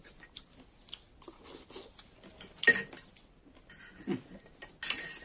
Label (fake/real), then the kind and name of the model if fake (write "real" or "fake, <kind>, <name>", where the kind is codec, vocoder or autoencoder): real